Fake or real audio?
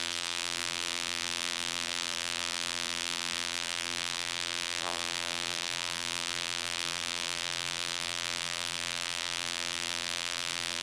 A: fake